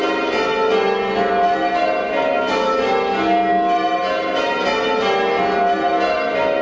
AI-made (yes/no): no